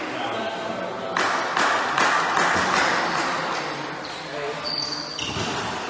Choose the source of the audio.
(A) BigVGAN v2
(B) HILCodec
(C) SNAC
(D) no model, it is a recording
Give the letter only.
D